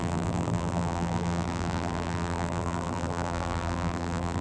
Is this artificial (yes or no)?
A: yes